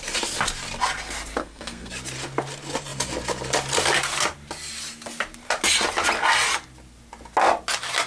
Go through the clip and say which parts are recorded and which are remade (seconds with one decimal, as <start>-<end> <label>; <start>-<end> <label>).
0.0-1.4 recorded; 1.4-1.9 remade; 1.9-8.1 recorded